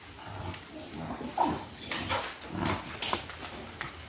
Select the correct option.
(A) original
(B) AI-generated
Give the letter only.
A